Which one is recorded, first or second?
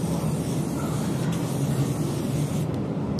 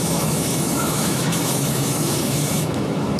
first